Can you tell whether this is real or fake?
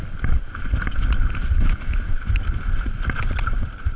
real